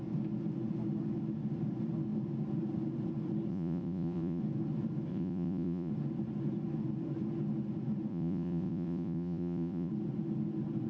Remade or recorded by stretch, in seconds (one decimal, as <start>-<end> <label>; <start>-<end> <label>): 0.0-3.5 recorded; 3.5-4.4 remade; 4.4-5.1 recorded; 5.1-5.9 remade; 5.9-8.1 recorded; 8.1-9.9 remade; 9.9-10.9 recorded